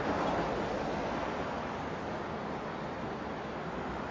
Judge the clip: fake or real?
real